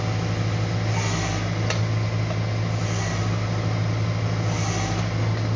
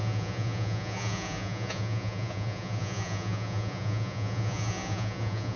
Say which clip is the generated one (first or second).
second